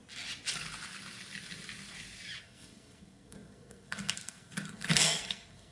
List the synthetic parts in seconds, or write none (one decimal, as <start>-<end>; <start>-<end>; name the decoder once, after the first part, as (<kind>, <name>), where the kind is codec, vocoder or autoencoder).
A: 2.4-5.7 (codec, SNAC)